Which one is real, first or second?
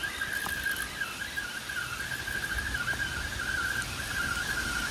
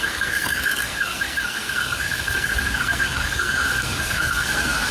first